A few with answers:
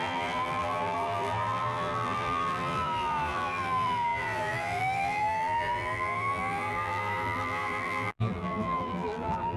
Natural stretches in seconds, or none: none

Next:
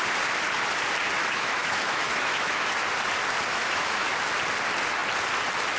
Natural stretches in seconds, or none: 0.0-1.2; 2.7-3.5; 4.1-5.8